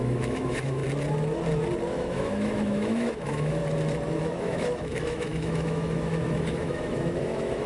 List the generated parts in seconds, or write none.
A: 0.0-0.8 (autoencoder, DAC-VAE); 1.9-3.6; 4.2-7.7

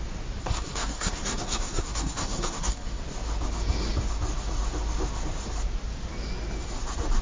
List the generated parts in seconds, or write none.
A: 0.4-3.0 (codec, SNAC)